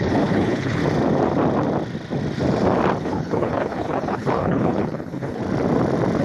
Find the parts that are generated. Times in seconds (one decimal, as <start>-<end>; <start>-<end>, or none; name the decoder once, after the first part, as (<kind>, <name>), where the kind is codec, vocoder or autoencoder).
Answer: 0.0-0.8 (codec, HILCodec); 3.0-5.4